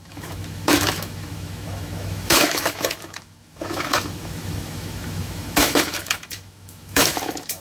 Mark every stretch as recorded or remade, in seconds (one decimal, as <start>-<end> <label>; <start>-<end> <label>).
0.0-7.6 remade